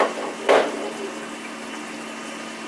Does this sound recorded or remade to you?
recorded